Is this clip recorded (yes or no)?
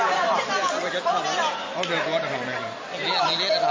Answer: yes